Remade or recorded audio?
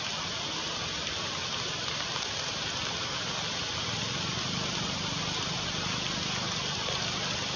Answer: recorded